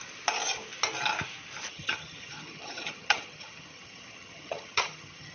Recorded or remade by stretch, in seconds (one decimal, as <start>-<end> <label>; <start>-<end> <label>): 0.0-1.7 recorded; 1.7-5.3 remade